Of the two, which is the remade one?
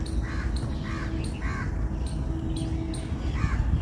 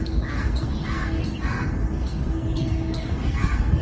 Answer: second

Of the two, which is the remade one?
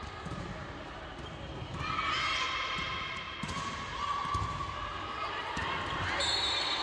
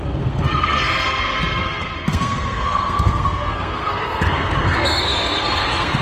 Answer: second